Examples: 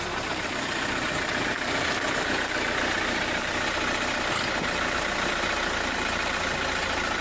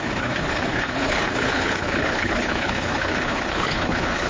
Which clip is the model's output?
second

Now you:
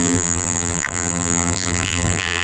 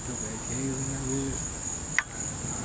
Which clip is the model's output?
first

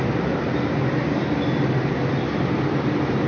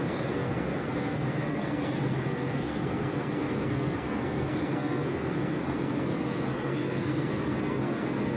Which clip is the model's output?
second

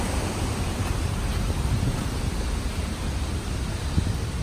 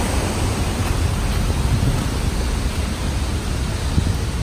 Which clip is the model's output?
first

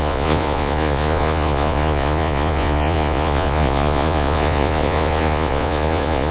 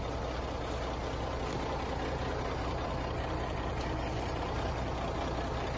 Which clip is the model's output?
first